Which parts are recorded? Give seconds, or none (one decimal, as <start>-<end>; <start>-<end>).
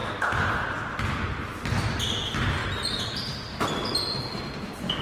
0.0-5.0